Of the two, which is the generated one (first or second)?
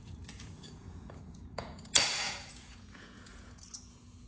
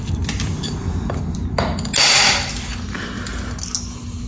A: first